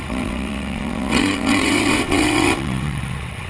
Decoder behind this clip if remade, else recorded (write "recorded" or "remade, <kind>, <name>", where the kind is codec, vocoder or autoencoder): remade, vocoder, WaveNeXt